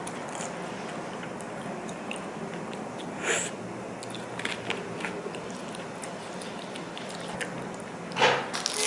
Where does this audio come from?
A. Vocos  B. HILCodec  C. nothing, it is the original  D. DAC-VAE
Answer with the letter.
C